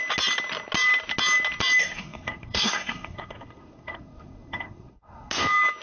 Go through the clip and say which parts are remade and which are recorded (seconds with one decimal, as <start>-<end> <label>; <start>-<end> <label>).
0.0-1.8 recorded; 1.8-5.3 remade; 5.3-5.8 recorded